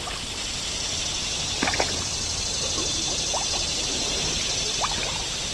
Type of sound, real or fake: real